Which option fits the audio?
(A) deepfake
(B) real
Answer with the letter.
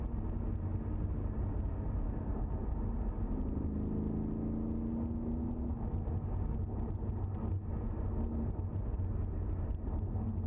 B